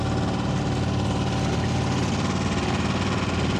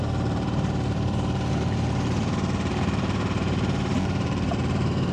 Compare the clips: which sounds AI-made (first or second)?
second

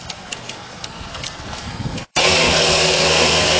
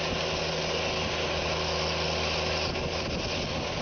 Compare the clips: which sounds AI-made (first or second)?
first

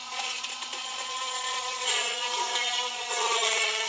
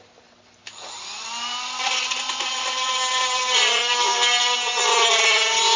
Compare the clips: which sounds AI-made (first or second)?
first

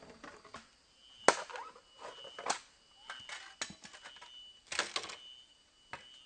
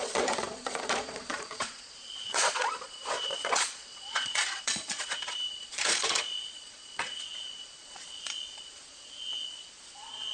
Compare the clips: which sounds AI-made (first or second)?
second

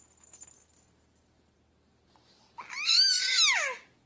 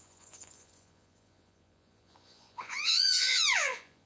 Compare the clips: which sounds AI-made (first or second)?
second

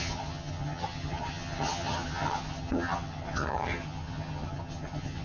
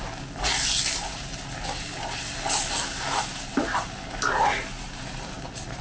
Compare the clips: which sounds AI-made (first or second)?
first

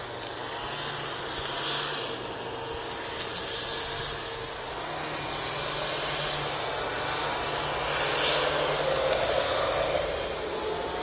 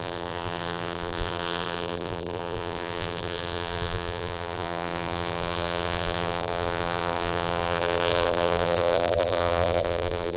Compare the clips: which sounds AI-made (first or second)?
second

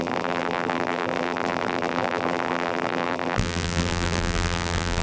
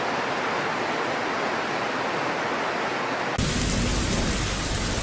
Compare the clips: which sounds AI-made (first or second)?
first